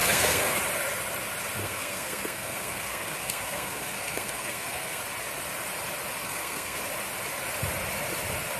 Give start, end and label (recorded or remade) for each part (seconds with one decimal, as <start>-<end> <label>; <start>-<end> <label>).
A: 0.0-0.6 remade; 0.6-1.6 recorded; 1.6-5.0 remade; 5.0-6.2 recorded; 6.2-6.8 remade; 6.8-8.6 recorded